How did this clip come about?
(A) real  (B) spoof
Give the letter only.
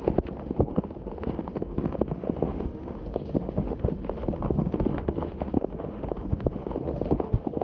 B